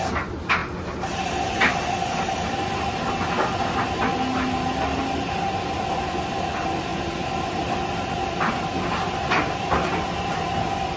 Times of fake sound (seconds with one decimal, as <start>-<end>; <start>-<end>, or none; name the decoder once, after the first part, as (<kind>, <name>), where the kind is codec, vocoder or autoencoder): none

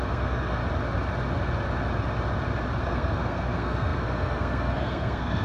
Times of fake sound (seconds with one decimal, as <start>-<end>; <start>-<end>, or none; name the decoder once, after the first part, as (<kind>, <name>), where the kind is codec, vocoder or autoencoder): 0.0-0.6 (codec, SNAC); 2.8-5.4

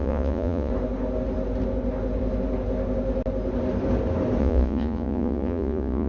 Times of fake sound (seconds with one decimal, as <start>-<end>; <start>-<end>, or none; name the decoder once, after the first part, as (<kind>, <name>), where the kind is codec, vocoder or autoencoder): 0.0-0.7 (vocoder, Vocos); 4.4-6.1

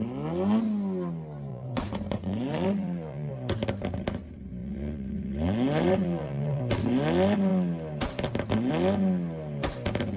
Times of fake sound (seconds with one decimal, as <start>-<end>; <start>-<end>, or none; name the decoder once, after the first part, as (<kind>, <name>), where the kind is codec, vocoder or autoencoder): 1.5-3.3 (vocoder, Vocos); 4.6-6.6

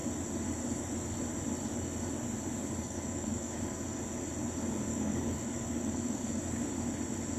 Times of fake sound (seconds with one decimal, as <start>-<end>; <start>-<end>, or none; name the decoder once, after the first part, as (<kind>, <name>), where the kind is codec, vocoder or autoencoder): 2.6-4.0 (codec, DAC); 4.9-6.4

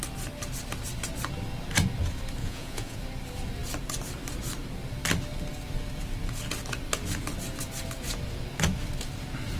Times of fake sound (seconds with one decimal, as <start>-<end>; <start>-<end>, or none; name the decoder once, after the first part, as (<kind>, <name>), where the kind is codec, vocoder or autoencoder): 2.4-3.0 (vocoder, Vocos)